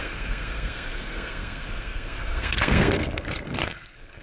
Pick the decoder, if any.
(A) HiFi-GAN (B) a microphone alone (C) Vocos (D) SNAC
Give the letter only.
D